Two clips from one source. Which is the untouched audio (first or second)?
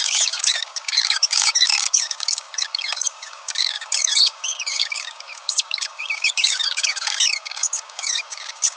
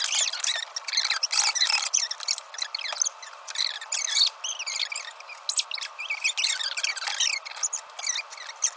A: second